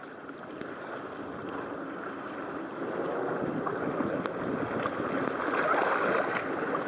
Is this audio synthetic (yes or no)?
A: no